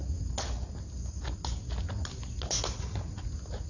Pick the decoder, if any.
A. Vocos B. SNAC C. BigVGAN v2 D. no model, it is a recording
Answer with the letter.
D